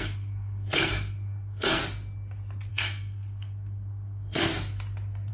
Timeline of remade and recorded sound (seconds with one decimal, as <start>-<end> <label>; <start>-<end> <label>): 0.0-1.8 remade; 1.8-2.7 recorded; 2.7-4.5 remade; 4.5-5.3 recorded